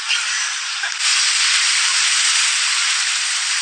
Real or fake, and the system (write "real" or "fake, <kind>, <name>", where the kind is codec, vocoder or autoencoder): real